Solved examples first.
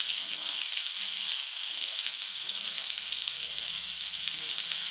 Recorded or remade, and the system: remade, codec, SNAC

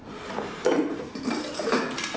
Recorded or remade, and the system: remade, vocoder, BigVGAN v2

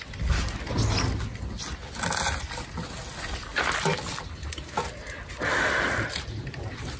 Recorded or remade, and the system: recorded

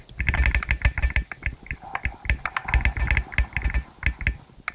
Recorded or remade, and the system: recorded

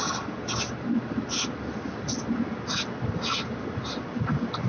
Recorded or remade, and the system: recorded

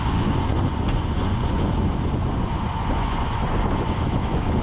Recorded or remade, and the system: remade, vocoder, Vocos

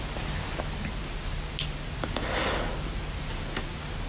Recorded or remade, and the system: recorded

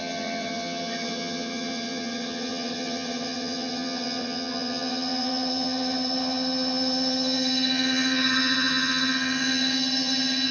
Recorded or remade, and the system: remade, vocoder, HiFi-GAN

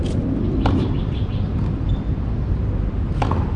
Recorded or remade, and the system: recorded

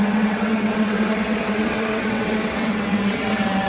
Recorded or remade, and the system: remade, vocoder, WaveNeXt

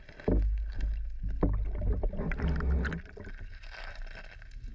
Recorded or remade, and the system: recorded